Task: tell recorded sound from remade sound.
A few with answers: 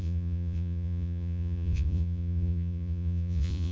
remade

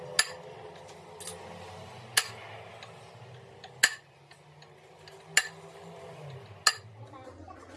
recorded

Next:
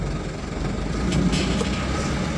recorded